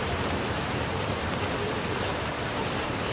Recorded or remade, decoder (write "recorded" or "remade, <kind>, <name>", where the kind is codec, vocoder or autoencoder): remade, vocoder, BigVGAN v2